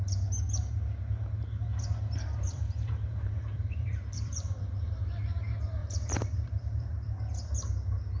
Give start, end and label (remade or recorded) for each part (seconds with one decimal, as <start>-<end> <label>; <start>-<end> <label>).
0.0-1.7 recorded; 1.7-5.0 remade; 5.0-5.8 recorded; 5.8-7.1 remade; 7.1-8.2 recorded